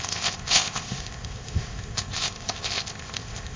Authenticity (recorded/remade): remade